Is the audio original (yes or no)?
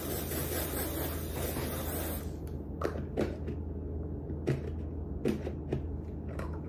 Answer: yes